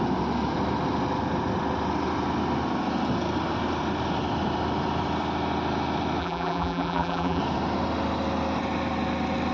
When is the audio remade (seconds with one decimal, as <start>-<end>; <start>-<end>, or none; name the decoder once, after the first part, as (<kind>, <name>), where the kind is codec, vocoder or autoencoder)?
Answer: 6.2-7.4 (vocoder, BigVGAN v2)